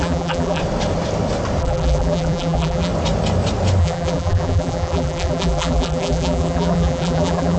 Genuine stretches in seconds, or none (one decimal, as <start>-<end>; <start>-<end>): 0.6-1.6; 2.9-3.8